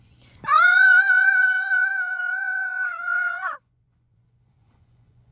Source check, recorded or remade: remade